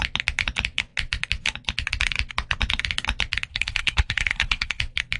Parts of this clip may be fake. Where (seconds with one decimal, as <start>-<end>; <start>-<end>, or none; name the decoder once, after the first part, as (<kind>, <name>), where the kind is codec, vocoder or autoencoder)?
3.5-4.8 (codec, SNAC)